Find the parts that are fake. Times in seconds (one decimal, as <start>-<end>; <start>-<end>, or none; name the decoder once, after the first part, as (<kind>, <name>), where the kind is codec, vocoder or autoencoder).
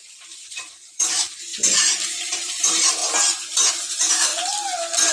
0.0-3.0 (vocoder, BigVGAN v2); 3.7-4.3